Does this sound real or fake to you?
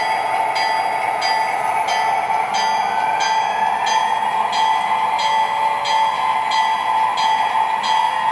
real